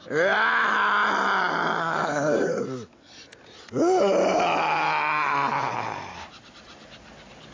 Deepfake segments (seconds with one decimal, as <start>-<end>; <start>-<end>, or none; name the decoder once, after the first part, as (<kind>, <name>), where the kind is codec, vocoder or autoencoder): 1.8-2.6 (codec, SNAC)